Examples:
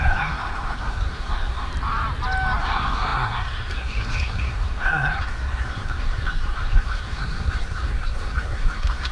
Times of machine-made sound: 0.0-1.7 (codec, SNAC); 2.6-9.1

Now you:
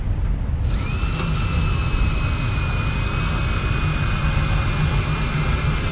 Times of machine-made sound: none

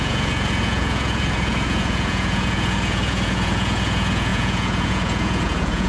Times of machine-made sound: 0.0-5.9 (vocoder, Vocos)